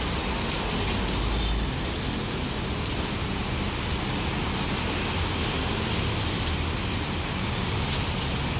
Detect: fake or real real